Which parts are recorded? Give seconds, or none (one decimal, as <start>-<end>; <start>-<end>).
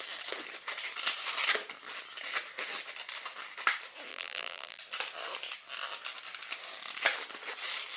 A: 0.0-4.1; 4.8-8.0